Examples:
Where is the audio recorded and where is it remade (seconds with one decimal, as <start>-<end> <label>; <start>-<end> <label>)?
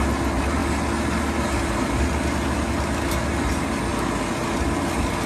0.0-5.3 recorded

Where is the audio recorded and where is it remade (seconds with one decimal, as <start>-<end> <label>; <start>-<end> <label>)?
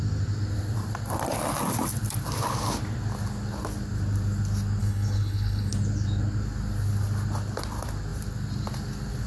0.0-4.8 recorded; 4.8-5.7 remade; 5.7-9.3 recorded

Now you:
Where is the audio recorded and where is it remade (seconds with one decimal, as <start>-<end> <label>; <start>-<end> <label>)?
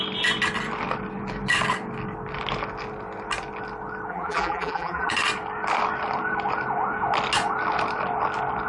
0.0-4.1 recorded; 4.1-5.1 remade; 5.1-8.7 recorded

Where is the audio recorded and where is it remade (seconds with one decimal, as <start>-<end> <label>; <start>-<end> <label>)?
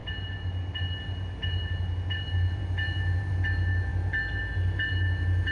0.0-5.5 recorded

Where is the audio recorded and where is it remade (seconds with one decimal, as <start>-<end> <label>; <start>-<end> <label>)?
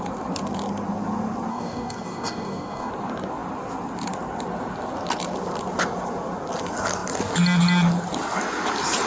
0.0-1.5 recorded; 1.5-2.9 remade; 2.9-9.1 recorded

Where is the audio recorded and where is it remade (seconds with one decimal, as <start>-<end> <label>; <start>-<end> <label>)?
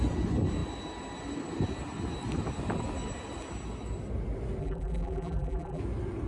0.0-4.6 recorded; 4.6-5.8 remade; 5.8-6.3 recorded